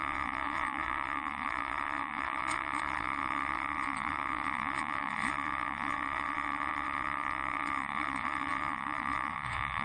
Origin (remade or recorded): remade